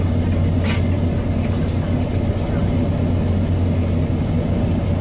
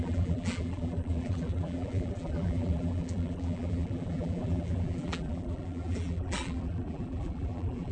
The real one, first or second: first